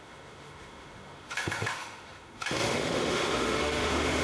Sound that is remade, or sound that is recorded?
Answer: remade